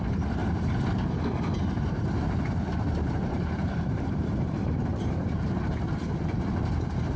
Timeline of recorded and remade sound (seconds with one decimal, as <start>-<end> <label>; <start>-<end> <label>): 0.0-7.2 remade